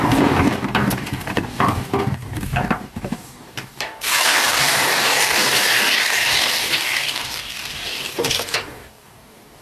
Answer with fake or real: fake